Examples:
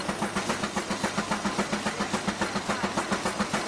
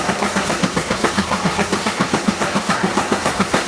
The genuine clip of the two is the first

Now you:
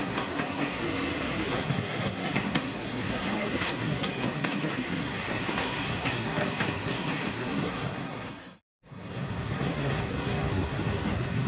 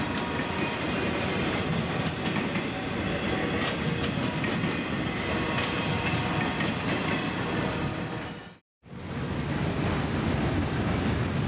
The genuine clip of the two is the second